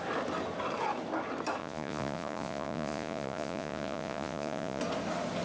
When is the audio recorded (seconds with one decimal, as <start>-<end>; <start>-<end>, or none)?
0.0-1.6; 4.8-5.4